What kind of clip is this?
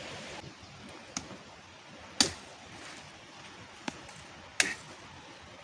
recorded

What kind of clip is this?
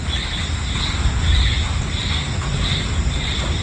recorded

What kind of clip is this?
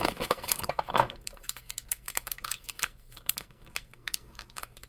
remade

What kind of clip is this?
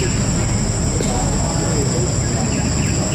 recorded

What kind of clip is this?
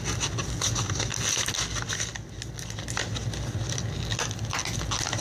recorded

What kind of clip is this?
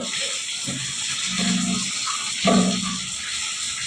recorded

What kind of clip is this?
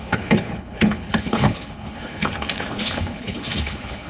remade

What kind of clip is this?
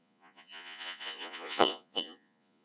remade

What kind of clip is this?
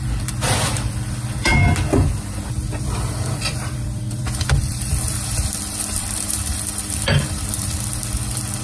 remade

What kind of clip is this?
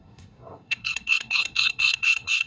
remade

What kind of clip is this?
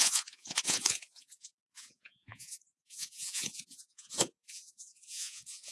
remade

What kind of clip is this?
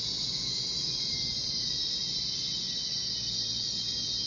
recorded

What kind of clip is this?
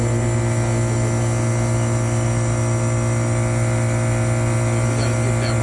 recorded